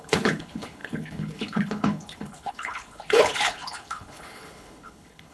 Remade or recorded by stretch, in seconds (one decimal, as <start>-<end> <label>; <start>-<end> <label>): 0.0-5.3 remade